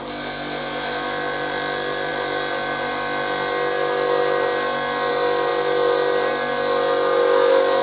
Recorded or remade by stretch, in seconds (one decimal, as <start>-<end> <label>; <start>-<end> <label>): 0.0-7.8 recorded